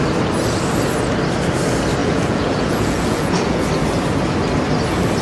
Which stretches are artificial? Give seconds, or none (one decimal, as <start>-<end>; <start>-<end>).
2.0-3.7